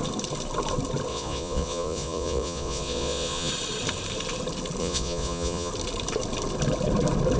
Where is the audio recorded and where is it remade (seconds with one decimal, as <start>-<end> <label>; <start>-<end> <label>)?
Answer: 0.0-1.1 recorded; 1.1-3.5 remade; 3.5-4.8 recorded; 4.8-5.7 remade; 5.7-7.4 recorded